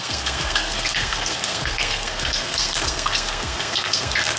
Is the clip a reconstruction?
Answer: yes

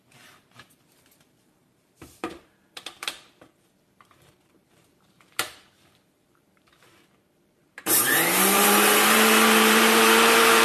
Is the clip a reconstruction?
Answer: yes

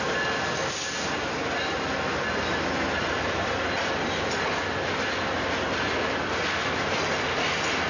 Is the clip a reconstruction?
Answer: no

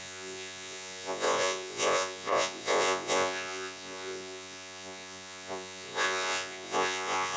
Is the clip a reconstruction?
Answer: yes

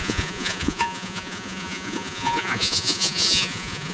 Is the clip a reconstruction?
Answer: yes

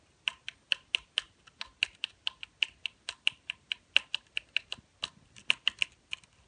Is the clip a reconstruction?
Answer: no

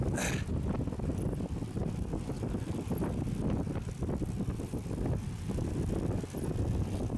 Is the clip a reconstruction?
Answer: no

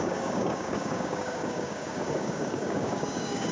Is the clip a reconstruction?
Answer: yes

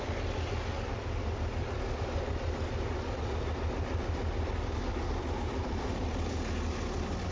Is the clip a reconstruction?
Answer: no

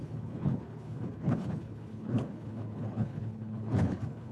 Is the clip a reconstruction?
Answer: yes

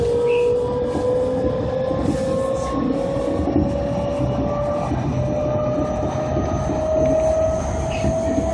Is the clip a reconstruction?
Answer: no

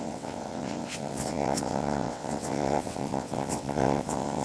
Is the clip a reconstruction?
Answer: yes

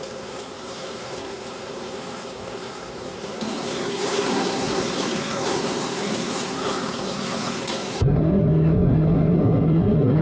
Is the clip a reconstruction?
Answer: yes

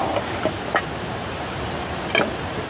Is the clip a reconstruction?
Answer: no